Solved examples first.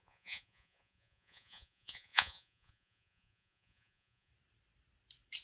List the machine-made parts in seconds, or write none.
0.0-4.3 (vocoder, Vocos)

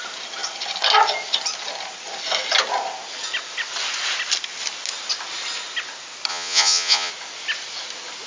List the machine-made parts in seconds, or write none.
6.3-7.1 (vocoder, Vocos)

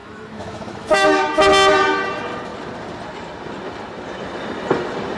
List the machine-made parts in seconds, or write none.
0.0-1.2 (autoencoder, DAC-VAE)

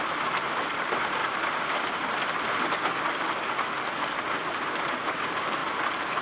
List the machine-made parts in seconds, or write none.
0.0-1.2 (vocoder, BigVGAN v2); 3.9-5.6

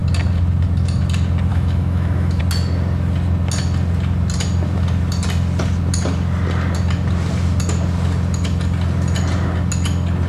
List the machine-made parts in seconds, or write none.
1.5-2.4 (autoencoder, DAC-VAE)

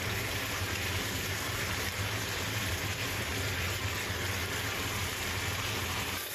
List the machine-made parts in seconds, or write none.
0.0-3.3 (vocoder, BigVGAN v2); 5.0-6.3